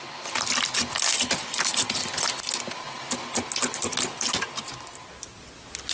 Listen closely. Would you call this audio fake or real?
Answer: real